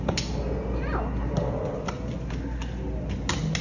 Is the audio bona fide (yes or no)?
yes